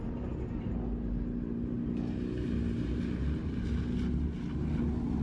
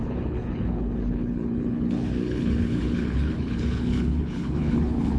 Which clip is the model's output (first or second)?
second